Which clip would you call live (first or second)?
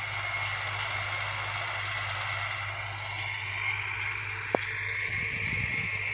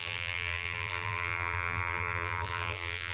first